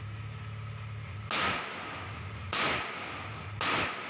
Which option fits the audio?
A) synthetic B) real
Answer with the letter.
B